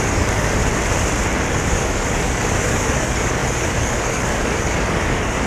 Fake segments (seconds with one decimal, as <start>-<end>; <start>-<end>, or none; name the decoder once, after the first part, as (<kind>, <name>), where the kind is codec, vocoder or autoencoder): 0.0-0.6 (codec, DAC); 1.5-5.5